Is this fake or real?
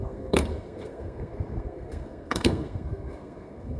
fake